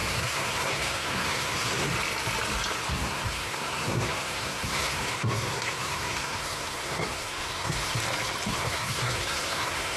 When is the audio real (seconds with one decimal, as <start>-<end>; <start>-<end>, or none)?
1.9-2.9; 8.0-8.5